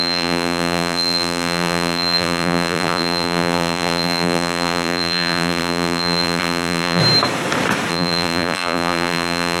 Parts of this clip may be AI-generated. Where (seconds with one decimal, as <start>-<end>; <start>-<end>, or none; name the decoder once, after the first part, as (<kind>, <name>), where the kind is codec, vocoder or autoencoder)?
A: 0.0-7.0 (vocoder, BigVGAN v2); 7.9-9.6